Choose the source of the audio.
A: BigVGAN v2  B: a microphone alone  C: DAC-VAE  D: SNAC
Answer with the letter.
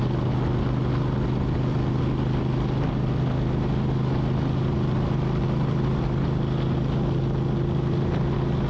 B